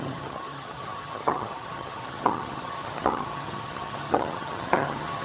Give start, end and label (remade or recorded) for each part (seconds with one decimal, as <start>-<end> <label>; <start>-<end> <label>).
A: 0.0-5.2 remade